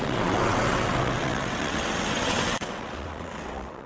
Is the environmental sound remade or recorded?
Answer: remade